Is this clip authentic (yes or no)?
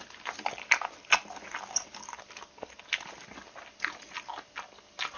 yes